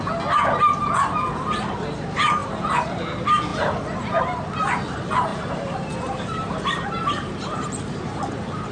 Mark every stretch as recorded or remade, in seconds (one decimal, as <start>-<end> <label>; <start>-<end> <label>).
0.0-2.4 recorded; 2.4-3.0 remade; 3.0-5.3 recorded; 5.3-8.2 remade; 8.2-8.7 recorded